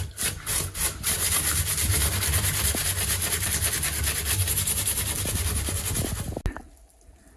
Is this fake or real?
real